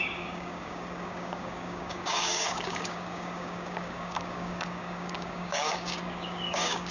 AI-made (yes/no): yes